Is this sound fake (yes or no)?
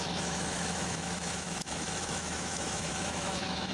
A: yes